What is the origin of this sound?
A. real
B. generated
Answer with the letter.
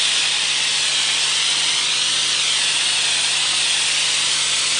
A